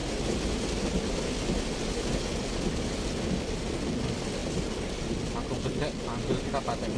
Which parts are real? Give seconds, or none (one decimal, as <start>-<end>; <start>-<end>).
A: 0.0-7.0